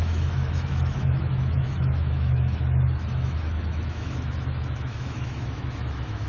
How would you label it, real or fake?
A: fake